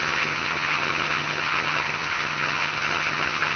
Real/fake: fake